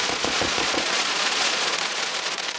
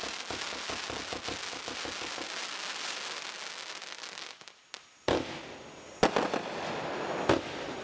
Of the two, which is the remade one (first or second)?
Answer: first